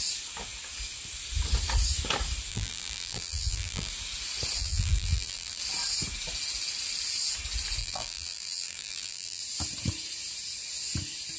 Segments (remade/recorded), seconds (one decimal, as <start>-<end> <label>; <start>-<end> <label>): 0.0-2.5 recorded; 2.5-3.9 remade; 3.9-4.6 recorded; 4.6-5.6 remade; 5.6-7.8 recorded; 7.8-9.4 remade; 9.4-11.4 recorded